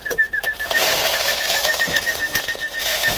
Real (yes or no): no